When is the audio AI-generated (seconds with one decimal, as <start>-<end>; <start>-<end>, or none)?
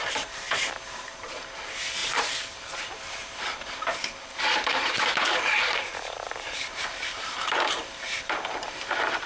0.0-9.3